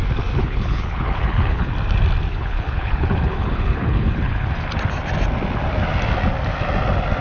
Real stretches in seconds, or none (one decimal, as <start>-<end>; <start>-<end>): 0.0-0.4; 1.7-2.3; 4.5-7.2